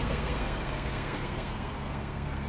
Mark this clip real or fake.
fake